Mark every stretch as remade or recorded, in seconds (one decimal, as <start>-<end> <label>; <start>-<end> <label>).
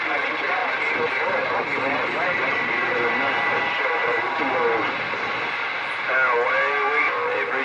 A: 0.0-7.6 recorded